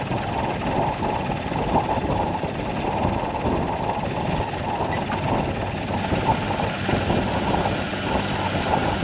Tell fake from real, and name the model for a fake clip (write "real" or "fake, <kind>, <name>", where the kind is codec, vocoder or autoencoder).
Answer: real